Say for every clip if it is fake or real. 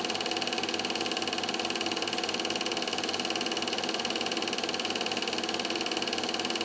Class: real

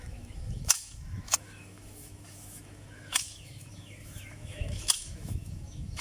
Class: fake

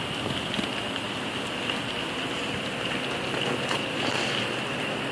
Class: real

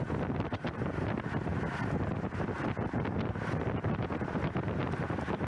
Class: real